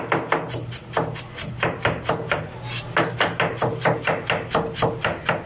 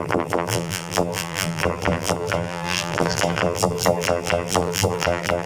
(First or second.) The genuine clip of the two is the first